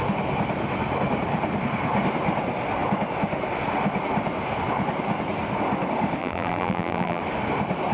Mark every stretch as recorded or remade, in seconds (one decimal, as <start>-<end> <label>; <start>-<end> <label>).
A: 0.0-6.2 recorded; 6.2-7.2 remade; 7.2-7.9 recorded